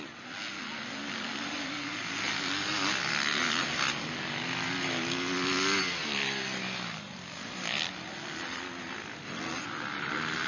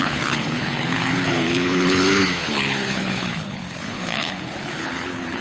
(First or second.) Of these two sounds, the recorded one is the first